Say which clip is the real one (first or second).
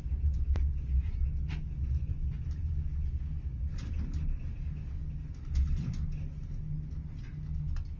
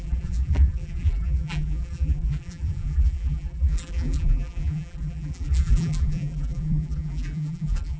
first